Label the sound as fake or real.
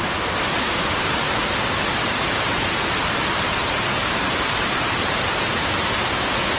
fake